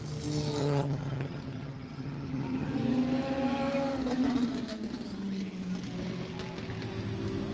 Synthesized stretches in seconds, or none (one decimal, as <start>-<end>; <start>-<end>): 0.6-2.7